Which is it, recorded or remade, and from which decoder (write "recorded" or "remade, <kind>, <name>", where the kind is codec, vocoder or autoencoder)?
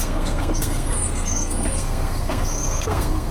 remade, codec, SNAC